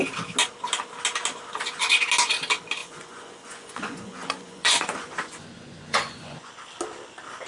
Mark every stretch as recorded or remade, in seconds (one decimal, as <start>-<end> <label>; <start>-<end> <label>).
0.0-2.8 recorded; 2.8-6.5 remade; 6.5-7.5 recorded